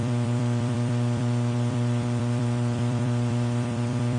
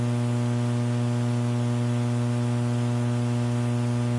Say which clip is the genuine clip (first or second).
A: second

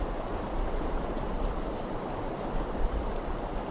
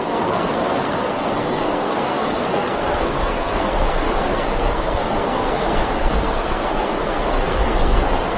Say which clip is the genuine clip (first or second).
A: first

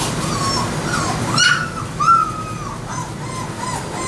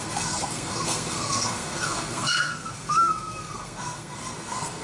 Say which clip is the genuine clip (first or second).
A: first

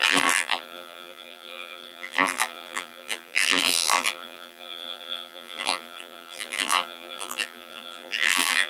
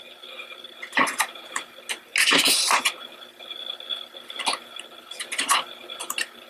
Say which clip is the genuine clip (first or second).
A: second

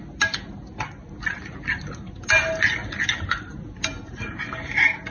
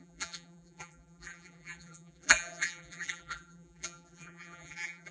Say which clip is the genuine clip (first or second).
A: first